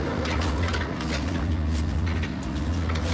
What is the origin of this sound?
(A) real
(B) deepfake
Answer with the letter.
B